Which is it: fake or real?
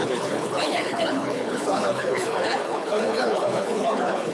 fake